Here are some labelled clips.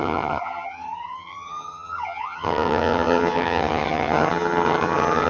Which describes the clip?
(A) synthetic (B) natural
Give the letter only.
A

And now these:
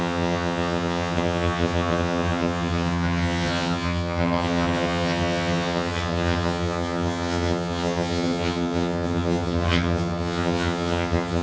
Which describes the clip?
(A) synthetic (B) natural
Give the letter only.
A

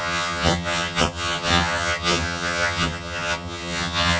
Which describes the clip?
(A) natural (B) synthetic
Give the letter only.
B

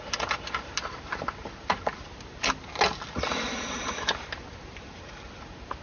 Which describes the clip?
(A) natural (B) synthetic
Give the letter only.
A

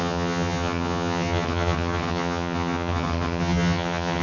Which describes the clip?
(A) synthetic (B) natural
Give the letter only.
A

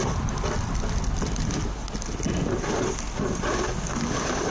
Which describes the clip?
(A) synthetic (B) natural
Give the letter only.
B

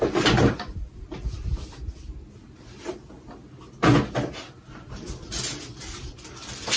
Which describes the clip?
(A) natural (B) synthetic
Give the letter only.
A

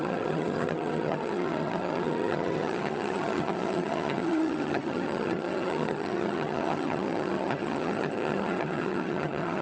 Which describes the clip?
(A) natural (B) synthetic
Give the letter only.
B